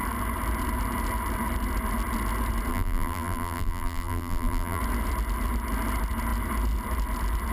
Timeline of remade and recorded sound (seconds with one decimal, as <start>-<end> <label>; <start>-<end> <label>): 0.0-2.7 recorded; 2.7-4.8 remade; 4.8-7.5 recorded